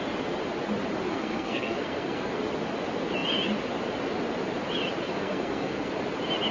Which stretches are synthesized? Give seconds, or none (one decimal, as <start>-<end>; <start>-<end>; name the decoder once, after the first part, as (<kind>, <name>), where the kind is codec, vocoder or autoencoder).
1.1-2.4 (codec, SNAC); 5.1-5.9